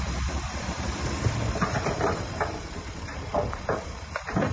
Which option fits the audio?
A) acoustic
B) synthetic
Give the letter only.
B